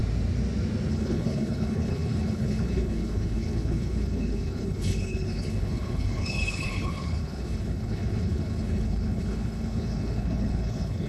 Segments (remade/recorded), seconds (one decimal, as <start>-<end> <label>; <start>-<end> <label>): 0.0-0.9 recorded; 0.9-11.1 remade